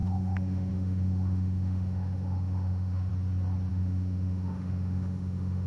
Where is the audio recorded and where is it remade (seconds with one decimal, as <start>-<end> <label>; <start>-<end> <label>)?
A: 0.0-3.1 remade; 3.1-3.7 recorded; 3.7-5.7 remade